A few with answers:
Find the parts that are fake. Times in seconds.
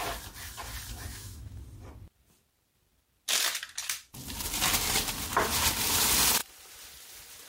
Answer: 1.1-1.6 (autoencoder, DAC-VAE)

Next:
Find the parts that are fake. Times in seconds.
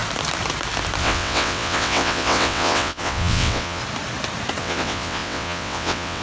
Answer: 1.0-3.8 (vocoder, WaveNeXt); 4.6-6.2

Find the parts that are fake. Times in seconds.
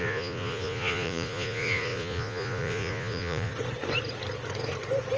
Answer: 0.0-3.5 (vocoder, Vocos)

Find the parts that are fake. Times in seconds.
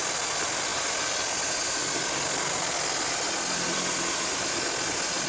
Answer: none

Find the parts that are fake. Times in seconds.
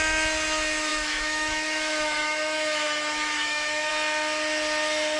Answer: 0.9-3.9 (autoencoder, DAC-VAE)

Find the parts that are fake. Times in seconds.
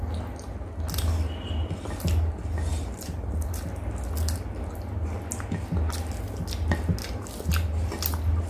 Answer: 2.7-3.5 (vocoder, BigVGAN v2)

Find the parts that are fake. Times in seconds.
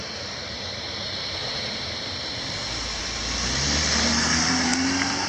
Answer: 0.0-5.3 (vocoder, BigVGAN v2)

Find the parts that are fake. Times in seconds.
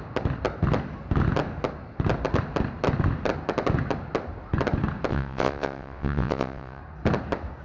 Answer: 5.1-6.8 (vocoder, WaveNeXt)